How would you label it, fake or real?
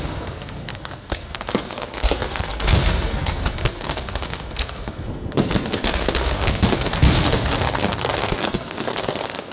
fake